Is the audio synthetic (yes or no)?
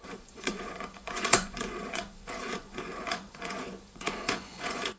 yes